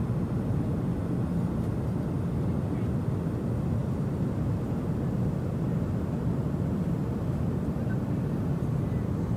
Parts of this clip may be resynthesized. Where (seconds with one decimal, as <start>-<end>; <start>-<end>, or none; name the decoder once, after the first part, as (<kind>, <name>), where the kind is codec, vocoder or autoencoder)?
3.8-4.8 (vocoder, BigVGAN v2)